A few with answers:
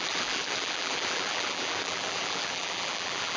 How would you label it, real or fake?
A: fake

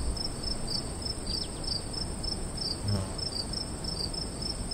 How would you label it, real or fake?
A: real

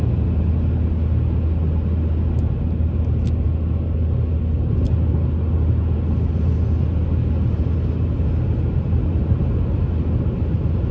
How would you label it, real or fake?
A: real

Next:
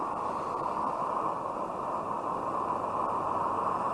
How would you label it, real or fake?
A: fake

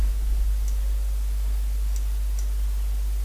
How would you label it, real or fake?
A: real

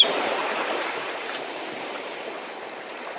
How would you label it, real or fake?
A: fake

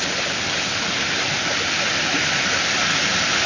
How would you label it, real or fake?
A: real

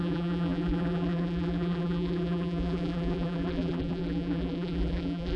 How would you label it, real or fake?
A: fake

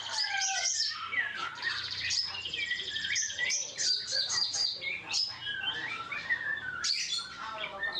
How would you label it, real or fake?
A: fake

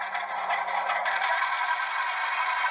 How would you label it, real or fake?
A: real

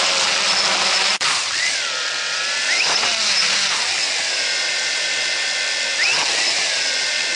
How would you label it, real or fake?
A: fake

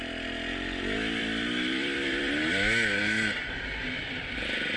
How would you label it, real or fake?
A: fake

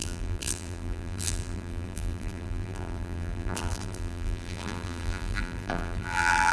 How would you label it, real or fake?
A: fake